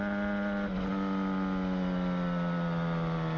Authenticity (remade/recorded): recorded